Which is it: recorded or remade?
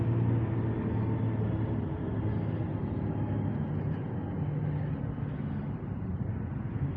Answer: recorded